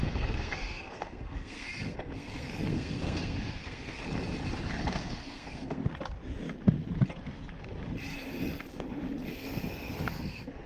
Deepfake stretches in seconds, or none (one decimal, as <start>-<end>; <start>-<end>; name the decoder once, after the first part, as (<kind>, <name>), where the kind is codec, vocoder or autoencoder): 0.0-4.0 (codec, SNAC); 4.9-5.8; 9.3-10.7